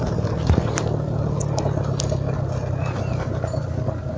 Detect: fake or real real